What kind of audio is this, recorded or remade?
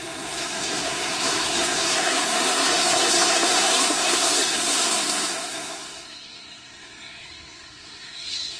remade